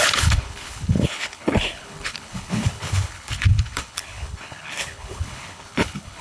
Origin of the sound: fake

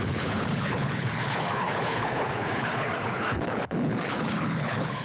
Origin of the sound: fake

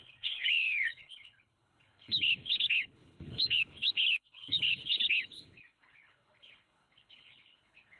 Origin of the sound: fake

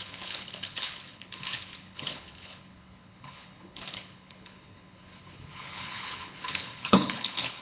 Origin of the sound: fake